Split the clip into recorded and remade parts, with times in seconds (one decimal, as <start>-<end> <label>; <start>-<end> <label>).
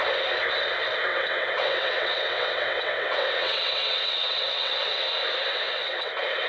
0.0-1.1 recorded; 1.1-5.0 remade; 5.0-5.5 recorded; 5.5-6.1 remade; 6.1-6.5 recorded